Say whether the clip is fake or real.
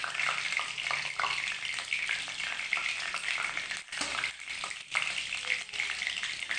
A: real